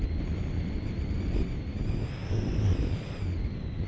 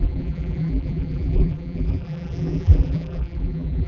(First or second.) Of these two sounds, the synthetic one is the second